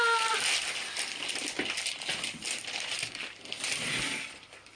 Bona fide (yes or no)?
yes